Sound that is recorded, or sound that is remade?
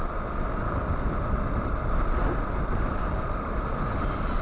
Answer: recorded